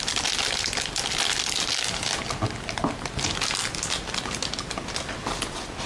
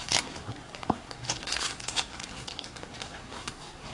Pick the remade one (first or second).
second